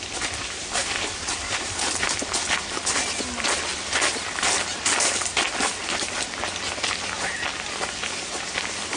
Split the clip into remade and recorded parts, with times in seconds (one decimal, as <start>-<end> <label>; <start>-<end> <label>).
0.0-0.8 recorded; 0.8-1.9 remade; 1.9-9.0 recorded